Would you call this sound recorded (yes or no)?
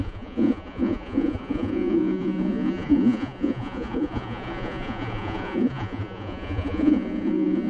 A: no